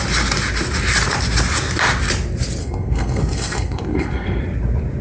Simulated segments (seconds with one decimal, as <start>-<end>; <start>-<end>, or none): 2.6-4.4